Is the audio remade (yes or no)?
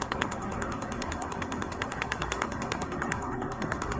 yes